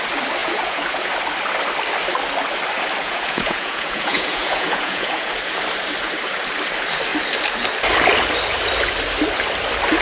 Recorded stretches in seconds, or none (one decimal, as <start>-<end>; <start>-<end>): 0.0-0.4; 1.1-3.0; 5.3-10.0